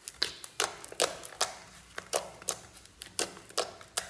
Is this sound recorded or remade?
recorded